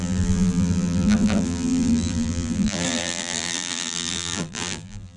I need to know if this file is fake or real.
fake